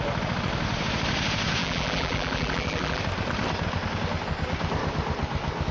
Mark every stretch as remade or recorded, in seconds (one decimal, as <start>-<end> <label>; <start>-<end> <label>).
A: 0.0-1.6 recorded; 1.6-3.0 remade; 3.0-5.7 recorded